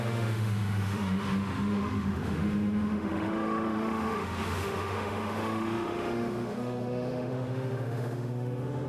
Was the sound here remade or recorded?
remade